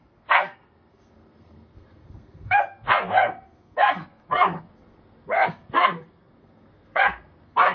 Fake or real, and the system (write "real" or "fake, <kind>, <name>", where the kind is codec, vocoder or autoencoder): fake, codec, SNAC